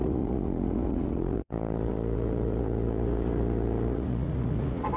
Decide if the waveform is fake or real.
fake